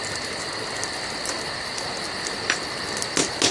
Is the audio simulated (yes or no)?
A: no